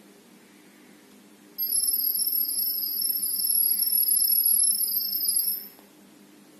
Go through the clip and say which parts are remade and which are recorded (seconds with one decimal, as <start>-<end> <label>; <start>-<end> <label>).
0.0-6.6 recorded